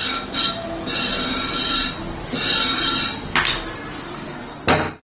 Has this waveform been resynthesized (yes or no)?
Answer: no